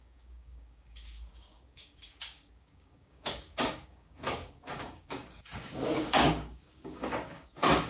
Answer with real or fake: fake